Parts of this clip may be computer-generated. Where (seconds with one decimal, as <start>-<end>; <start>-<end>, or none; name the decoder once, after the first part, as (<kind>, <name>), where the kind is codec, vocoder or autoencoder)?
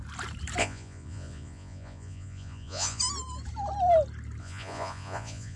0.6-3.0 (vocoder, Vocos); 4.4-5.6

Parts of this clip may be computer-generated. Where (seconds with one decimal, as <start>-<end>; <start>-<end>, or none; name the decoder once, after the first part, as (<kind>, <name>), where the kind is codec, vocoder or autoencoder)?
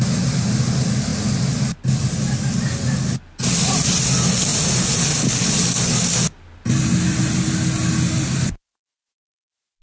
none